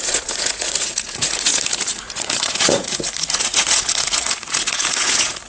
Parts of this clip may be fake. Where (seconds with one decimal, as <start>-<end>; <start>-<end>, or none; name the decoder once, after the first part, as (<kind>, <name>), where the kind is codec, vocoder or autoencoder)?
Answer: 0.0-5.5 (vocoder, Vocos)